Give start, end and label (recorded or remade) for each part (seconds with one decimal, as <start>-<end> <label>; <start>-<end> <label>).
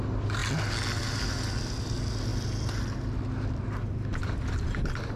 0.0-5.2 recorded